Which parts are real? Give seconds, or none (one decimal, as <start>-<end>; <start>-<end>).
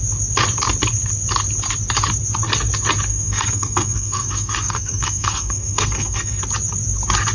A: 0.0-3.1; 6.4-7.3